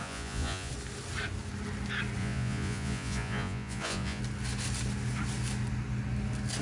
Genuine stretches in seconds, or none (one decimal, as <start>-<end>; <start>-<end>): 0.7-2.2; 4.2-6.6